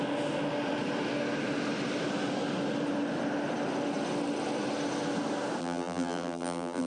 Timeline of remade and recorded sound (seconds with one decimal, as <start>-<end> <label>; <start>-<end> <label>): 0.0-5.6 recorded; 5.6-6.9 remade